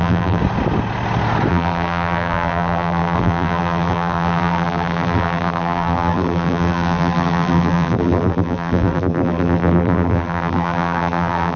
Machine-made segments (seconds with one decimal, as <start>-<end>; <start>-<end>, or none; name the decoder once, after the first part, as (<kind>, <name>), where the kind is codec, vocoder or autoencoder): 0.0-0.4 (vocoder, BigVGAN v2); 1.5-11.6